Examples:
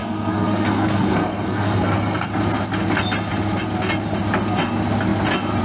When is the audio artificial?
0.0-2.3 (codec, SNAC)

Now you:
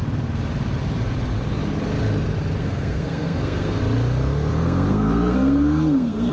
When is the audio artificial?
2.6-3.8 (codec, SNAC); 4.5-6.3

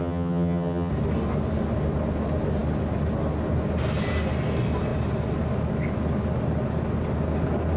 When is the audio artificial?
0.0-0.9 (vocoder, HiFi-GAN)

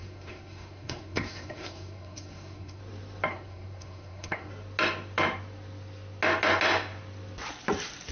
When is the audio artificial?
0.0-2.8 (codec, SNAC); 3.3-4.5

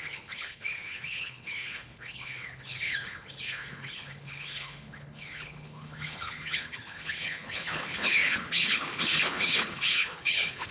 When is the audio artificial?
0.0-10.7 (codec, HILCodec)

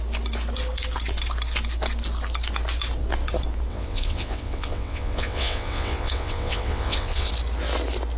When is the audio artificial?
3.7-7.3 (vocoder, WaveNeXt)